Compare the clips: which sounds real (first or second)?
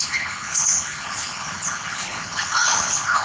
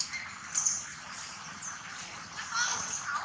second